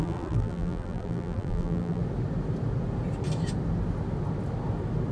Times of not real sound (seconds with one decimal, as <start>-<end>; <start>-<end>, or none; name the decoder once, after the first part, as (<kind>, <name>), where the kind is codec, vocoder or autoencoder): 0.0-2.0 (vocoder, BigVGAN v2)